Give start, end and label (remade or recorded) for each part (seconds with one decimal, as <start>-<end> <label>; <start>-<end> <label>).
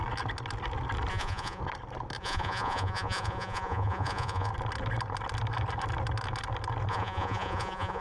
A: 0.0-1.1 recorded; 1.1-1.6 remade; 1.6-2.2 recorded; 2.2-4.5 remade; 4.5-6.9 recorded; 6.9-8.0 remade